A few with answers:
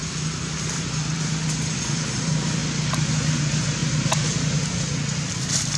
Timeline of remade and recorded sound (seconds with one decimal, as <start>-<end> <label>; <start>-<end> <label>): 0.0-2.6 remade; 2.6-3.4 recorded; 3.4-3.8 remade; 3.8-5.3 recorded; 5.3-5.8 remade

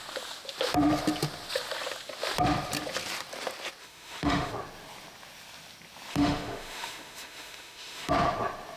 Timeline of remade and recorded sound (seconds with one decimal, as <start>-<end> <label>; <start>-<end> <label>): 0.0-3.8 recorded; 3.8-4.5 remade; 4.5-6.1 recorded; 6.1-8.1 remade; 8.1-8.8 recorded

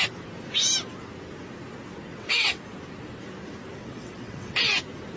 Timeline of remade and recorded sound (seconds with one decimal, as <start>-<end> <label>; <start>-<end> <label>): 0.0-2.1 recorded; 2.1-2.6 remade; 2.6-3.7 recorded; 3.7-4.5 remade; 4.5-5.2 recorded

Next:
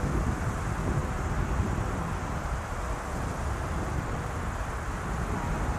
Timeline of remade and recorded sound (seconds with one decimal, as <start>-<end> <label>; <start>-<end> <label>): 0.0-5.8 remade

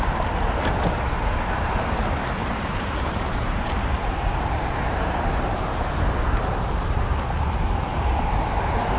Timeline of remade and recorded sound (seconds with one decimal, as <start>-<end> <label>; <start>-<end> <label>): 0.0-2.4 recorded; 2.4-5.8 remade; 5.8-9.0 recorded